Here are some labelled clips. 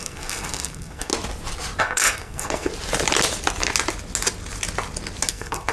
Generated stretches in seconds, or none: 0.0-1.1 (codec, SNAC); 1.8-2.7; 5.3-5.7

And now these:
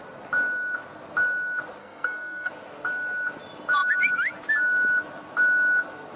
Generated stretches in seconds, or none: 1.8-2.5 (codec, SNAC)

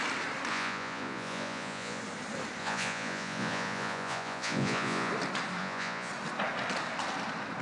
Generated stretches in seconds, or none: 0.5-2.0 (vocoder, Vocos); 2.6-5.1; 5.6-6.1

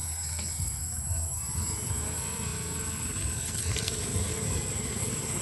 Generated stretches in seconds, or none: 0.0-5.4 (codec, SNAC)

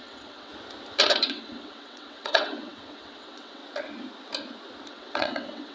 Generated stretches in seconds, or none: 0.0-0.5 (vocoder, WaveNeXt); 1.0-3.6; 4.9-5.7

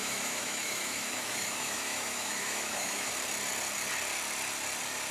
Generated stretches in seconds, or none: 0.0-3.1 (autoencoder, DAC-VAE)